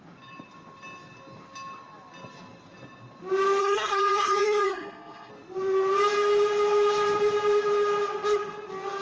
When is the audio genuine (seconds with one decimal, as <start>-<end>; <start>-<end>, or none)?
0.0-3.6; 5.3-9.0